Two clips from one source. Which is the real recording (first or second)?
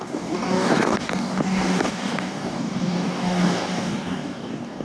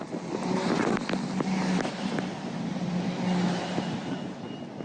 second